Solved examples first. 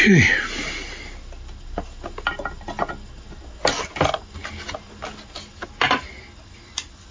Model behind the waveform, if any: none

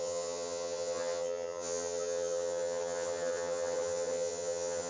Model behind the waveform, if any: vocoder, HiFi-GAN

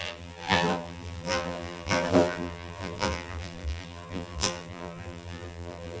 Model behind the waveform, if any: vocoder, BigVGAN v2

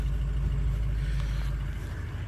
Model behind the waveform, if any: none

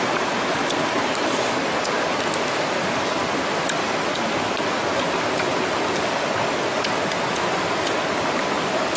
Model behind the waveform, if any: none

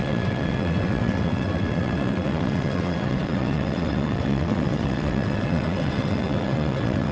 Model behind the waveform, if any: vocoder, WaveNeXt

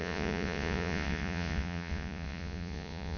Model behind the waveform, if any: vocoder, Vocos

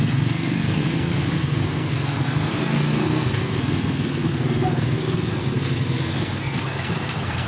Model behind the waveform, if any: codec, SNAC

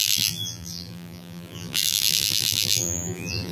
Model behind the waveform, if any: vocoder, BigVGAN v2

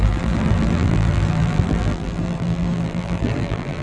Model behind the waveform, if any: vocoder, BigVGAN v2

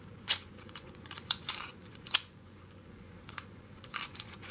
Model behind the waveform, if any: vocoder, Vocos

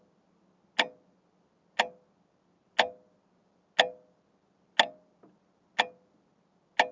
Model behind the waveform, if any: none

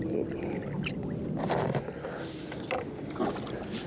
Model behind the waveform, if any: none